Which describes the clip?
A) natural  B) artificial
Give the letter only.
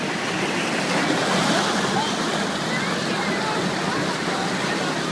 A